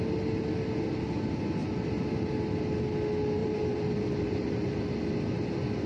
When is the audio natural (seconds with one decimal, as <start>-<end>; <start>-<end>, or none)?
0.0-1.6; 2.3-3.4; 4.8-5.9